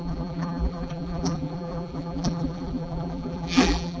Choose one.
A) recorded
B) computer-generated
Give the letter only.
B